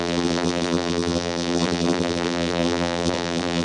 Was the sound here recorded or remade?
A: remade